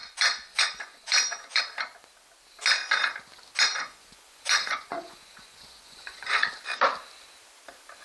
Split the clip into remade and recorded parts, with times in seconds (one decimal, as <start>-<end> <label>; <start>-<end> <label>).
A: 0.0-1.6 remade; 1.6-3.7 recorded; 3.7-6.5 remade; 6.5-8.0 recorded